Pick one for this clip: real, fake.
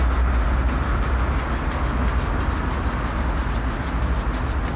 real